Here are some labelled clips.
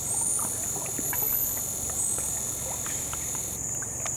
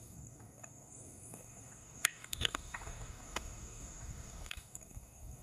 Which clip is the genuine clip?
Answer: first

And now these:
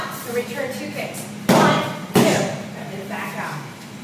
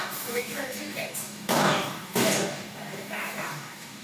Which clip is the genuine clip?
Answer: first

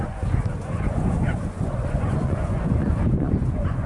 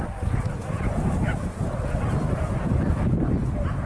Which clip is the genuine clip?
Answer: second